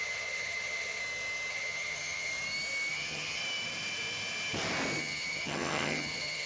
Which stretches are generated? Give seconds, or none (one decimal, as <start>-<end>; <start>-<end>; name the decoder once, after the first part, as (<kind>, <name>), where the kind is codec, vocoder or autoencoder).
0.0-1.0 (vocoder, HiFi-GAN); 1.5-2.3; 2.9-3.4; 5.0-6.5